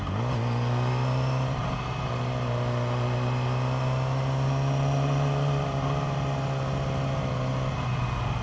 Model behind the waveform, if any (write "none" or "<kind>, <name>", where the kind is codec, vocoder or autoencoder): none